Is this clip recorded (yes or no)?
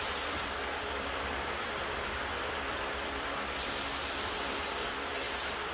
no